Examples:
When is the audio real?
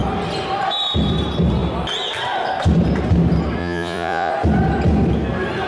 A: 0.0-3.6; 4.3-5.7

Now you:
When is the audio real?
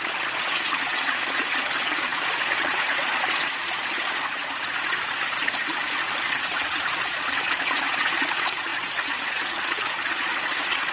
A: none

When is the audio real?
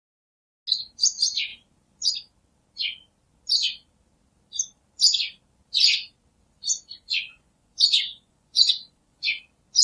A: 0.0-6.9; 9.4-9.8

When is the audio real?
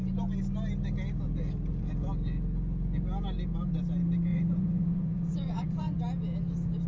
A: 0.0-4.3; 6.0-6.9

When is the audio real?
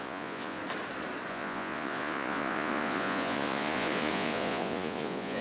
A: 0.6-1.3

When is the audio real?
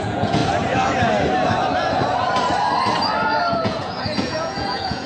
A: 0.4-3.5